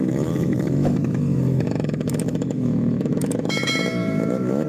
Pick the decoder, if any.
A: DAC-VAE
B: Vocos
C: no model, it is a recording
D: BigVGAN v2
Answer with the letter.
A